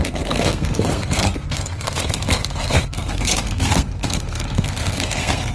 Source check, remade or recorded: remade